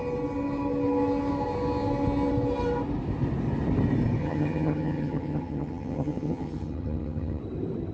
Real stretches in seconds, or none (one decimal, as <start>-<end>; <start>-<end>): 0.0-4.2; 7.4-7.9